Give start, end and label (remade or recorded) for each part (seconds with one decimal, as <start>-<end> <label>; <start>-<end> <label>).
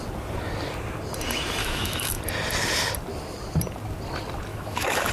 0.0-1.6 recorded; 1.6-2.2 remade; 2.2-4.5 recorded; 4.5-5.1 remade